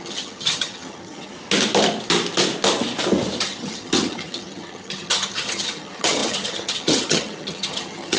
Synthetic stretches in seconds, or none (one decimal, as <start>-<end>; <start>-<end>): 0.0-1.3; 3.4-8.2